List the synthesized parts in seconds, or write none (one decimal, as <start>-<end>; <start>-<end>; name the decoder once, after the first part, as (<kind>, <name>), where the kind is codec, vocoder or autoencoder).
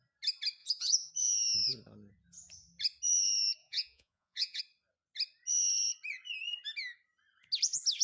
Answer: 0.6-1.1 (vocoder, Vocos); 3.6-4.6